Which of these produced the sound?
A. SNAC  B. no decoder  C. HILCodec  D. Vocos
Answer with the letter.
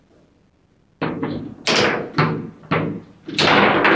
B